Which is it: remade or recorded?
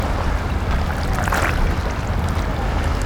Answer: recorded